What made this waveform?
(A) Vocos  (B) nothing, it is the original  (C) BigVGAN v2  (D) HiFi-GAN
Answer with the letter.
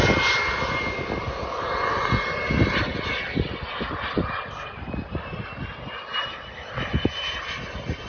B